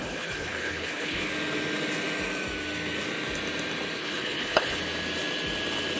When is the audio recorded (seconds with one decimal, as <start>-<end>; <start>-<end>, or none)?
1.3-4.0; 4.8-6.0